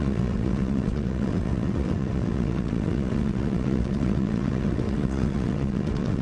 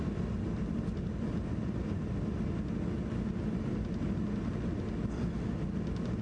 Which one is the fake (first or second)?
first